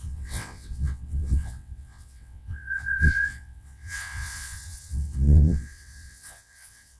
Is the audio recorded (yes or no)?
no